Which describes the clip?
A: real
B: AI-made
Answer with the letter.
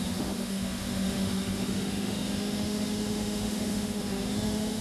B